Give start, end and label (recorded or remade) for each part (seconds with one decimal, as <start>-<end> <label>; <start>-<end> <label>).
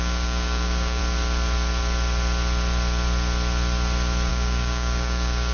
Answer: 0.0-1.0 remade; 1.0-4.3 recorded; 4.3-5.5 remade